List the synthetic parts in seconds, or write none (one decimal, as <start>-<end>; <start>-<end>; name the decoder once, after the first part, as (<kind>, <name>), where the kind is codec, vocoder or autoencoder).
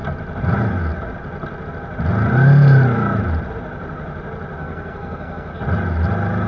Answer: 4.6-5.6 (codec, SNAC)